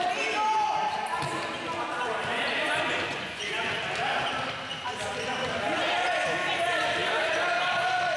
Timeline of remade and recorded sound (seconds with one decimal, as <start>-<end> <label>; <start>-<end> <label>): 0.0-3.1 recorded; 3.1-3.7 remade; 3.7-8.2 recorded